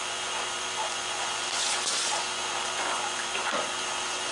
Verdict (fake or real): fake